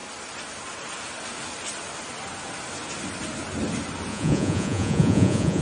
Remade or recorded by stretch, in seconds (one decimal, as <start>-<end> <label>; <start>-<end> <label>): 0.0-4.1 recorded; 4.1-5.6 remade